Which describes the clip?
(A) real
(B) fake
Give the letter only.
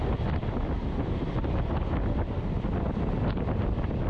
A